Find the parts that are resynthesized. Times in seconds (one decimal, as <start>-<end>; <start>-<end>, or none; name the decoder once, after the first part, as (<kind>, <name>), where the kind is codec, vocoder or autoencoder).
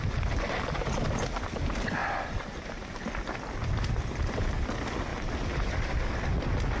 2.0-3.1 (vocoder, BigVGAN v2); 5.1-6.0